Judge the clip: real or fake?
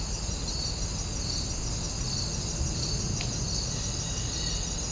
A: real